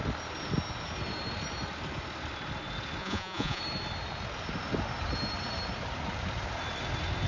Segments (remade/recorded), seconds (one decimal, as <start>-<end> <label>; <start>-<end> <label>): 0.0-3.0 recorded; 3.0-3.6 remade; 3.6-7.3 recorded